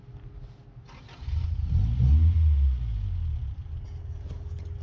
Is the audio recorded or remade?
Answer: recorded